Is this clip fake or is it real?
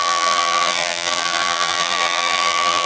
fake